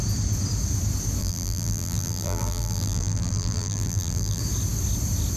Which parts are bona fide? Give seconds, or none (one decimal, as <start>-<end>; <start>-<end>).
0.0-1.2; 4.4-5.4